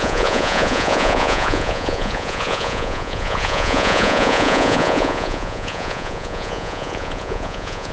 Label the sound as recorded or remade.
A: remade